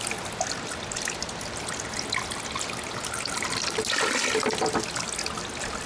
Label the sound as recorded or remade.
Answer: recorded